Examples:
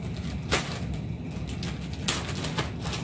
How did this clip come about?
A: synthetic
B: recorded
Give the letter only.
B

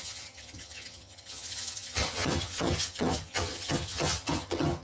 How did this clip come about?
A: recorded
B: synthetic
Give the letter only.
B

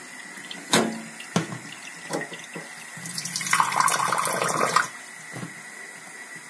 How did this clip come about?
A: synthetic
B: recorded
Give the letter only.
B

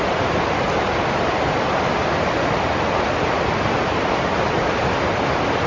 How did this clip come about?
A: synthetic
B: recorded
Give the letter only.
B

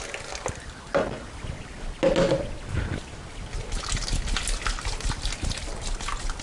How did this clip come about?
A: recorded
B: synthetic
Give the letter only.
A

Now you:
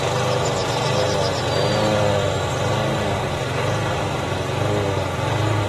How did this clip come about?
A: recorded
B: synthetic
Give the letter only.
A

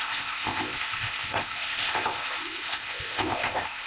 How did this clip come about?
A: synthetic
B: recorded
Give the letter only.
A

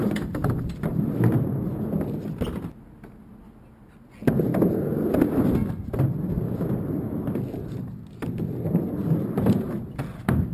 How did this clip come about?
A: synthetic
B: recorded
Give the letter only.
B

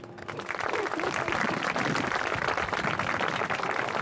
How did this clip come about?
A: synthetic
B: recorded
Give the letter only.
B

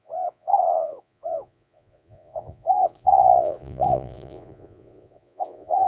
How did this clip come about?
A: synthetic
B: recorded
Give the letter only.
A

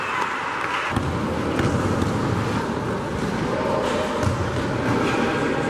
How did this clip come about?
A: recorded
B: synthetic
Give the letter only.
A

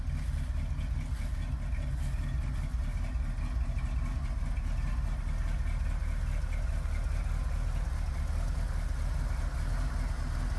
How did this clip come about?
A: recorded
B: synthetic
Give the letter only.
A